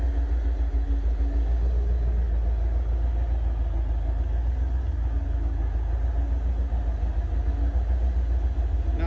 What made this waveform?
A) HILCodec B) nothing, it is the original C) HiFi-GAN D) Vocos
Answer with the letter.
B